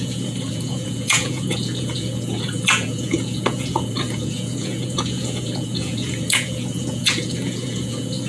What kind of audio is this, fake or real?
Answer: fake